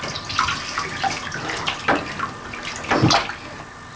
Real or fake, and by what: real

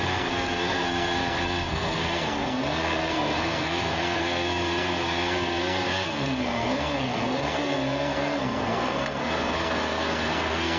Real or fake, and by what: fake, codec, SNAC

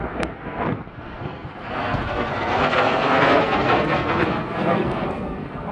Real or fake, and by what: fake, codec, SNAC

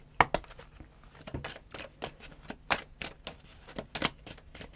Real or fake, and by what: real